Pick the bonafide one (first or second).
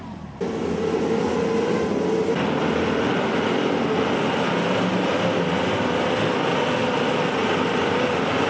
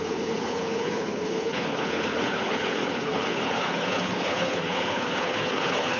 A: first